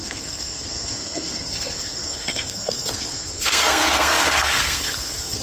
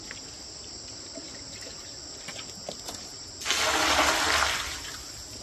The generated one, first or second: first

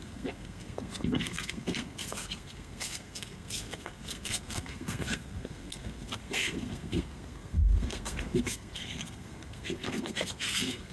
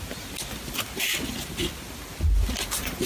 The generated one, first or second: first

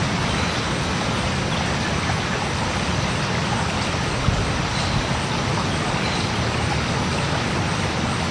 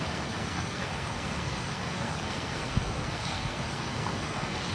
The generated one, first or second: second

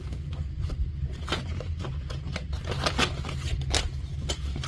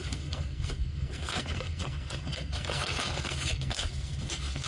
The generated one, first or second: second